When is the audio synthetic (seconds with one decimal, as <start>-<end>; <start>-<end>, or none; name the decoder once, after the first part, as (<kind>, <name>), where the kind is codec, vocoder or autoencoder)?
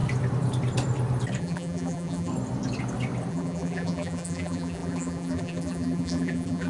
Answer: 1.4-2.3 (vocoder, BigVGAN v2); 3.3-6.7